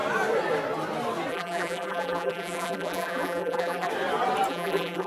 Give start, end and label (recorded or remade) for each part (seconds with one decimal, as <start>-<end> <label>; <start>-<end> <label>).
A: 0.0-1.3 recorded; 1.3-3.9 remade; 3.9-4.5 recorded; 4.5-5.1 remade